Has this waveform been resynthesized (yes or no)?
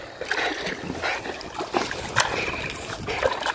no